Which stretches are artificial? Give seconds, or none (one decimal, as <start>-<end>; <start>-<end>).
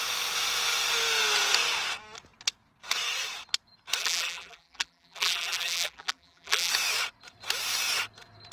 4.0-6.7